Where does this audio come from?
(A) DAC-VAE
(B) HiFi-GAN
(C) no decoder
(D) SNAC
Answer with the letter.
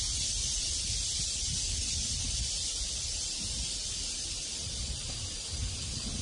C